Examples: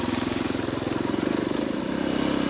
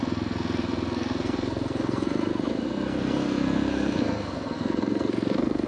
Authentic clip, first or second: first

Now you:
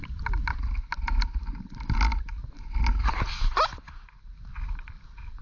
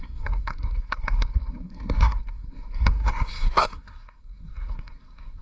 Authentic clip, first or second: first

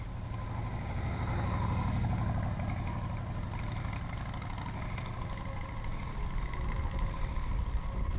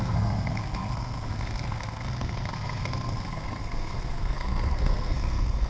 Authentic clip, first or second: first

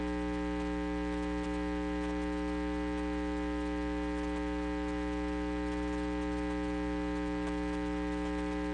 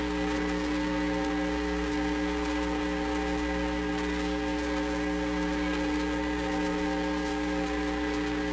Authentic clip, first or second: first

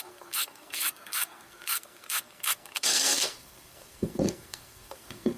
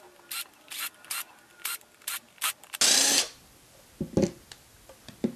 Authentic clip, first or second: second